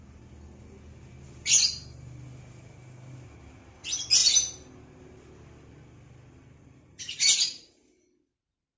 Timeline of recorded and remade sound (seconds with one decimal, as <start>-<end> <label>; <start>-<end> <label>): 0.0-8.8 recorded